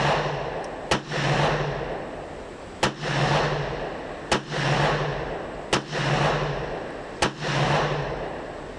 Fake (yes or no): no